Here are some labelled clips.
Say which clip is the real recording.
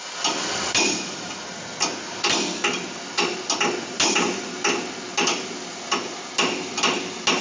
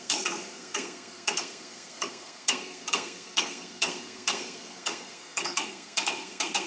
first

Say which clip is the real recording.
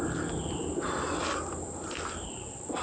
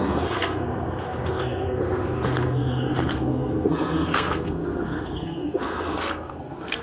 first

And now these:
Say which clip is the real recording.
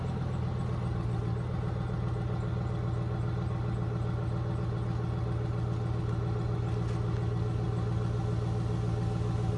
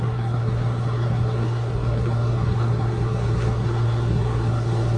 first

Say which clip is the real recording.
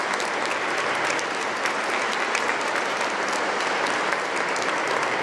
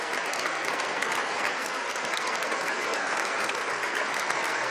first